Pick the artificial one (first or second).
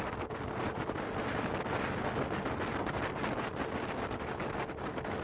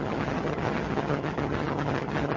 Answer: second